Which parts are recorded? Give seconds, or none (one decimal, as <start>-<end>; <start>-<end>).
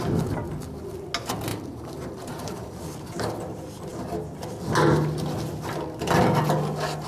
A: 0.0-1.5; 2.8-7.1